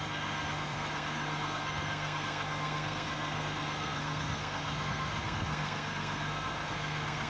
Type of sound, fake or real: fake